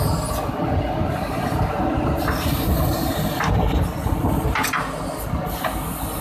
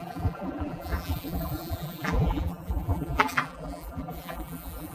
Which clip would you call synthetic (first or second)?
second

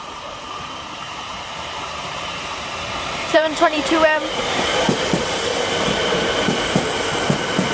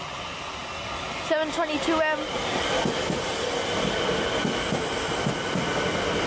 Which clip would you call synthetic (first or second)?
first